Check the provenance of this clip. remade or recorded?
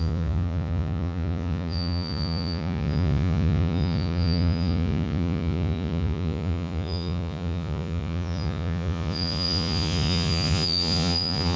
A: remade